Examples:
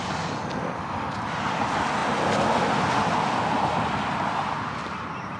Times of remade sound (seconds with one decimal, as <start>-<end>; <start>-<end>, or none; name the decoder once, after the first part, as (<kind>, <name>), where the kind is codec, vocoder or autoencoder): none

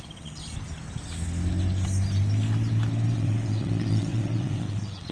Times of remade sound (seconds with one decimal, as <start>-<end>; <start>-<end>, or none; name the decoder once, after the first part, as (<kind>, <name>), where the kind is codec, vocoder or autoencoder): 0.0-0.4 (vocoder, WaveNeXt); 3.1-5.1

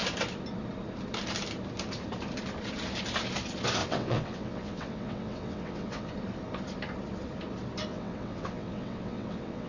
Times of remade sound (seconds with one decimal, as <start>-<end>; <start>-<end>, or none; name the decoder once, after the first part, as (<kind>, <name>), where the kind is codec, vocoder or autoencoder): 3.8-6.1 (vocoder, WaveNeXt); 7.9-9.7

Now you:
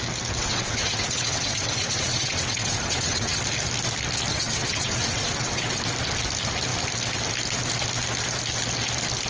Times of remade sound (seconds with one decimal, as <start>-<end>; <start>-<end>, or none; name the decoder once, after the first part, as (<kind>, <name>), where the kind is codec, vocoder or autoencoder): 0.4-3.4 (vocoder, WaveNeXt); 4.3-5.8

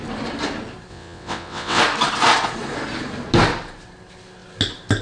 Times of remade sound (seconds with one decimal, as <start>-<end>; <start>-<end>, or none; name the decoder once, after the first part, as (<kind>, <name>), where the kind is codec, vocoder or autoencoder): 0.9-1.8 (vocoder, WaveNeXt)

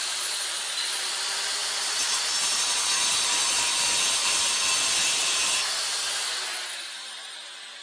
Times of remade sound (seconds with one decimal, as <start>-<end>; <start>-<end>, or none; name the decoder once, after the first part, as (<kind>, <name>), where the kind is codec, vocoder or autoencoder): none

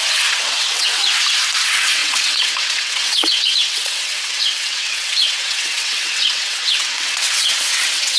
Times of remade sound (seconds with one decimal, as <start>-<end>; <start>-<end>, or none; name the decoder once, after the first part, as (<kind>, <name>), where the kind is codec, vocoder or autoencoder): 0.0-1.0 (vocoder, WaveNeXt); 1.6-8.2